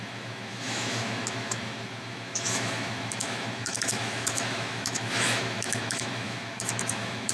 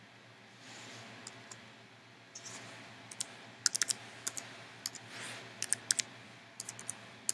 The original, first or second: second